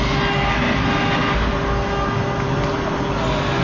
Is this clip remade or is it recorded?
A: recorded